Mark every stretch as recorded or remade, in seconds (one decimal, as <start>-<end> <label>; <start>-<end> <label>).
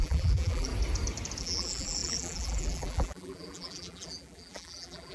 0.0-0.7 remade; 0.7-1.4 recorded; 1.4-5.1 remade